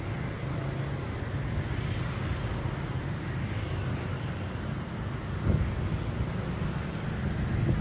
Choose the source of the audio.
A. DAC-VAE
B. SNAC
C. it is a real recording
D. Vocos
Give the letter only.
C